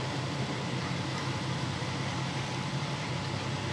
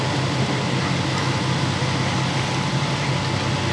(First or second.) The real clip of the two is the second